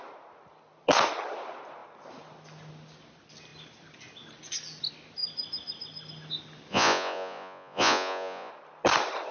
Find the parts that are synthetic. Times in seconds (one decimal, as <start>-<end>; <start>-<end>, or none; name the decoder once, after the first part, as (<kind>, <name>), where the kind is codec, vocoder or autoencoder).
6.7-8.5 (vocoder, Vocos)